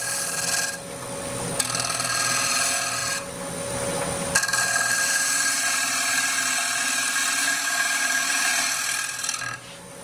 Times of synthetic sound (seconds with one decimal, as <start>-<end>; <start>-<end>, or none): 7.4-8.5